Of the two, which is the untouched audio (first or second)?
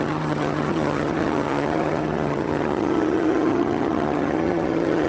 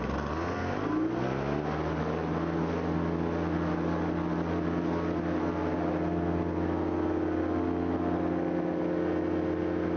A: second